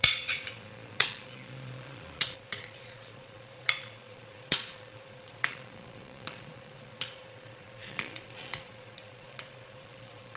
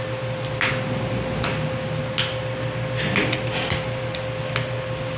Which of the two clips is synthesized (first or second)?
first